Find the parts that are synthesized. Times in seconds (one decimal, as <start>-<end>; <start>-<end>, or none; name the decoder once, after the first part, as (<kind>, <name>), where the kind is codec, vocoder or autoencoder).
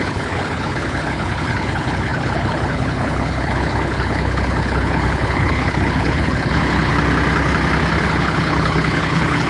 0.0-6.9 (codec, HILCodec); 8.0-9.5